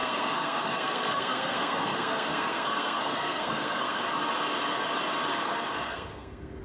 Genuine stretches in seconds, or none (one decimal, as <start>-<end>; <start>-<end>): 4.0-5.3